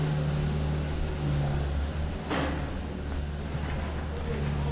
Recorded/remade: recorded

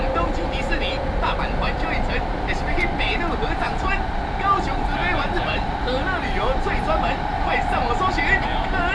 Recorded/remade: recorded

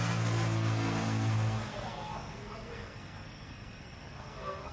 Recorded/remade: remade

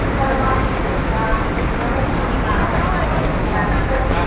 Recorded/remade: recorded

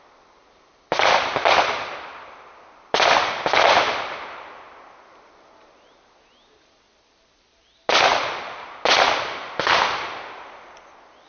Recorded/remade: recorded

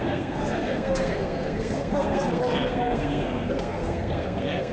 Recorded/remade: remade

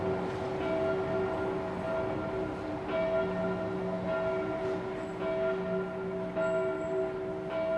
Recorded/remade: recorded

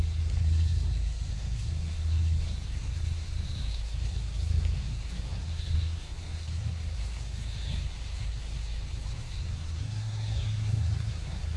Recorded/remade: remade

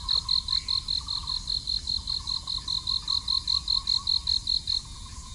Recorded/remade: recorded